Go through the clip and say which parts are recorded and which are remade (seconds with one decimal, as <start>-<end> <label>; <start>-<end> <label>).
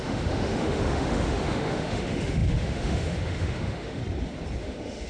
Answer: 0.0-4.0 remade; 4.0-4.6 recorded; 4.6-5.1 remade